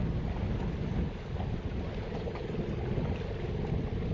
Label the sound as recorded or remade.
recorded